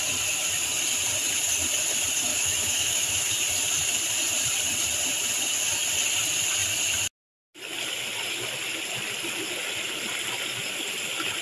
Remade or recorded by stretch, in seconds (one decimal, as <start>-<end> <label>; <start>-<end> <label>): 0.0-2.3 recorded; 2.3-3.3 remade; 3.3-11.4 recorded